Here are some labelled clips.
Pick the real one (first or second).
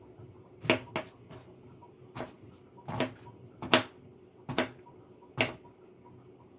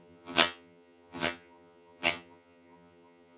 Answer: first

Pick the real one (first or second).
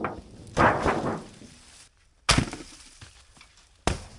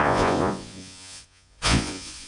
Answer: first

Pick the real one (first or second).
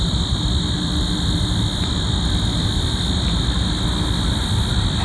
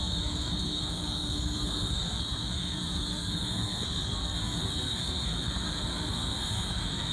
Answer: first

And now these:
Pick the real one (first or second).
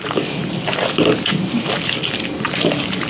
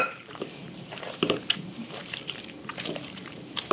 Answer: first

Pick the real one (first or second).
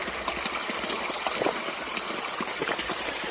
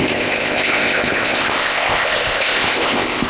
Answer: first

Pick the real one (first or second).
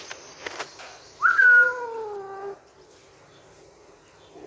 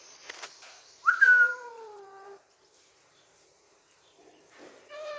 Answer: first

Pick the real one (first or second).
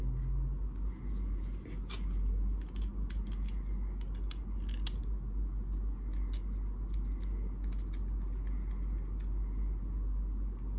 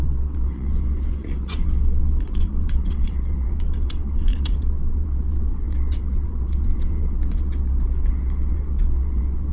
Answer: first